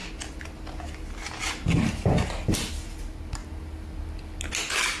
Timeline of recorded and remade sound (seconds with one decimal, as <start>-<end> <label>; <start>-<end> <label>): 0.0-5.0 recorded